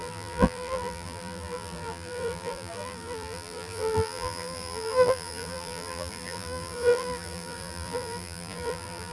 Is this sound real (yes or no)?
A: no